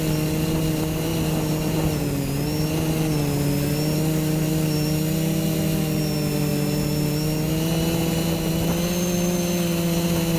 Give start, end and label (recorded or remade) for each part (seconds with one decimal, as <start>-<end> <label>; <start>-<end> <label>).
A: 0.0-10.4 recorded